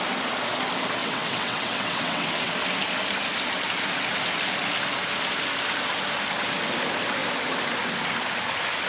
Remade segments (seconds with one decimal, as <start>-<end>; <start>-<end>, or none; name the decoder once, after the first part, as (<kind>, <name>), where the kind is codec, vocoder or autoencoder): 1.0-2.5 (vocoder, WaveNeXt)